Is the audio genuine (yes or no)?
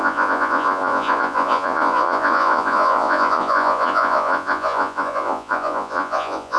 no